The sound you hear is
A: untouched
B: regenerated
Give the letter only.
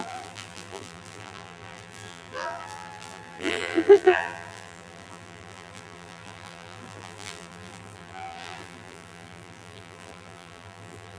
B